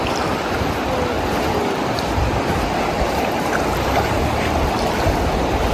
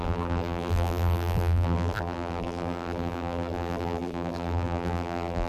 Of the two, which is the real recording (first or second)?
first